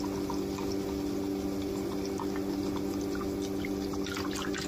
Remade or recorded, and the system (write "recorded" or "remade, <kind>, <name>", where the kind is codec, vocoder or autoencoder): recorded